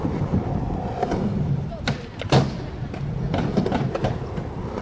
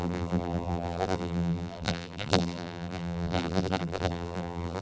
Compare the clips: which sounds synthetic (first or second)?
second